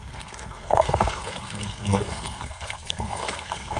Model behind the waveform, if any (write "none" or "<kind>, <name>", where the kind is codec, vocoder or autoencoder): codec, SNAC